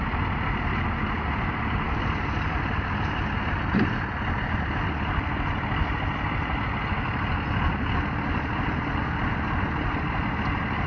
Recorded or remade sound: recorded